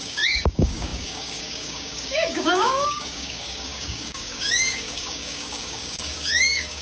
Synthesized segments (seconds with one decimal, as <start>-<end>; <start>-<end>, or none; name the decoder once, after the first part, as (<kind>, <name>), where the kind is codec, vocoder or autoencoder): 0.0-6.8 (codec, DAC)